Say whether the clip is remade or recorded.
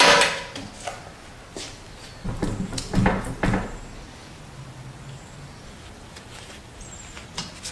recorded